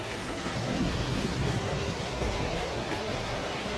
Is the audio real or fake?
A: fake